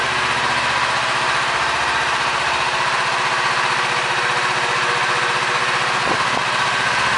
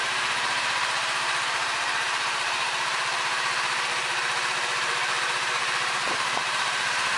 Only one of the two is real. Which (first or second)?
first